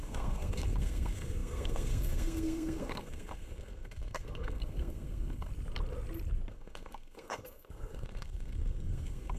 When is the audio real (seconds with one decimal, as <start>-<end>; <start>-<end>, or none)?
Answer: 5.5-6.5